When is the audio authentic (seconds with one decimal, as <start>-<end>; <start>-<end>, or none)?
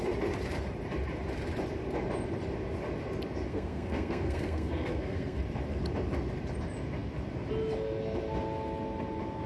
0.0-3.5; 5.4-9.5